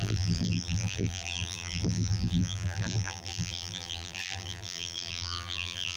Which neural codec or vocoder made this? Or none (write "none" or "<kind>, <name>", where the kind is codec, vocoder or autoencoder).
vocoder, BigVGAN v2